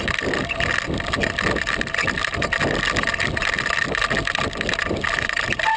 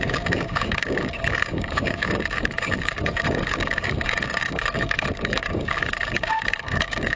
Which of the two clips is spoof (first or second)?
second